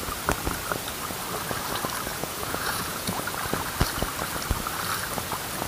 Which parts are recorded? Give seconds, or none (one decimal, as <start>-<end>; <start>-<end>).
0.0-2.1; 3.2-5.7